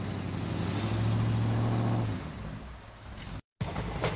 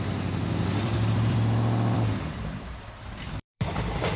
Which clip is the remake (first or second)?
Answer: second